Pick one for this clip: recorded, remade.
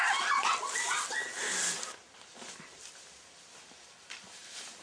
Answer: recorded